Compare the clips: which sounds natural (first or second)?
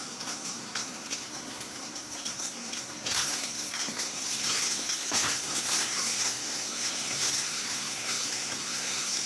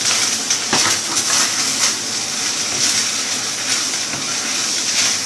second